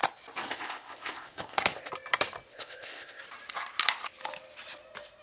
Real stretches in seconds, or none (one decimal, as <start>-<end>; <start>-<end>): 0.0-0.5; 1.9-2.5; 3.2-5.2